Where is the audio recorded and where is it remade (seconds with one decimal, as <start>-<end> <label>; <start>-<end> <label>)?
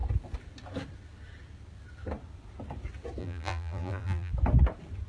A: 0.0-3.2 recorded; 3.2-4.3 remade; 4.3-5.1 recorded